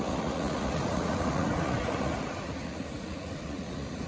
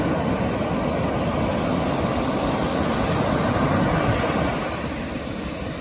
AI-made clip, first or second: first